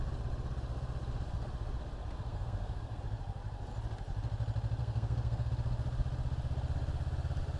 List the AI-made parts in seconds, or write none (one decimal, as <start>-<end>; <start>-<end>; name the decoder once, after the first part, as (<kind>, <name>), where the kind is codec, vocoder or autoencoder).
2.3-3.0 (codec, SNAC); 4.8-5.5